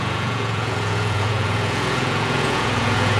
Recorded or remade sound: remade